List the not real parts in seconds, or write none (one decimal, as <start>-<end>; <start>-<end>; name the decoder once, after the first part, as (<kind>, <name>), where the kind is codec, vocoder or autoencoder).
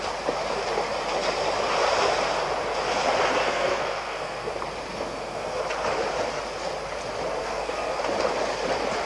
3.4-4.5 (codec, SNAC); 4.9-5.6; 7.4-8.0